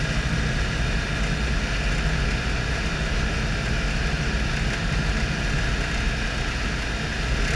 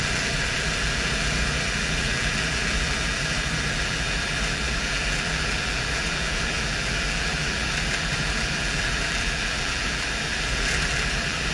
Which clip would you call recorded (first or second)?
first